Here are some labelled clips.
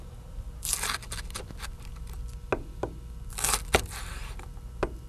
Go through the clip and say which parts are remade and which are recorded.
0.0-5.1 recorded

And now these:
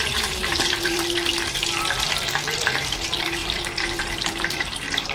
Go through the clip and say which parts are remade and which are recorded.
0.0-1.3 remade; 1.3-2.0 recorded; 2.0-5.1 remade

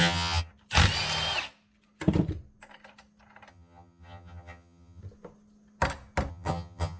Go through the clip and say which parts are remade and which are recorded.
0.0-0.5 remade; 0.5-3.5 recorded; 3.5-5.0 remade; 5.0-6.3 recorded; 6.3-7.0 remade

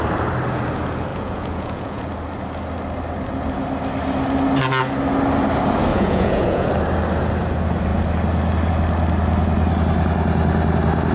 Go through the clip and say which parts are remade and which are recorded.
0.0-1.1 recorded; 1.1-2.1 remade; 2.1-5.9 recorded; 5.9-6.7 remade; 6.7-11.1 recorded

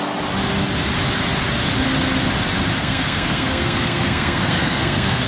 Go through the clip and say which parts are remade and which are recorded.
0.0-2.8 recorded; 2.8-5.3 remade

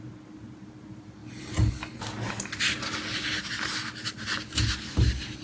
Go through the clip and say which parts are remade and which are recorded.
0.0-5.4 recorded